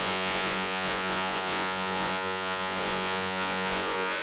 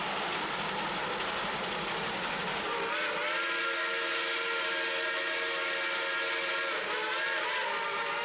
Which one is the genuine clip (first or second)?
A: second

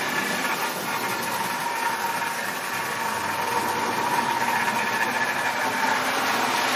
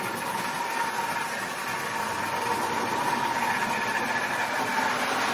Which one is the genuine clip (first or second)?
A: first